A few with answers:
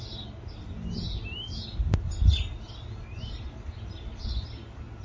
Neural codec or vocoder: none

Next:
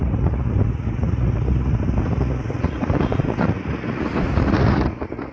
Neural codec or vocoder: vocoder, Vocos